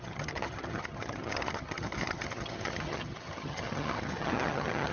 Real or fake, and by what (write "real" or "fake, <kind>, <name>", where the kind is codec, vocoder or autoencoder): fake, vocoder, HiFi-GAN